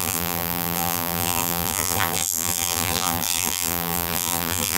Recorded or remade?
remade